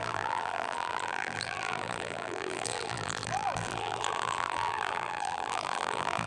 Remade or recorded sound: remade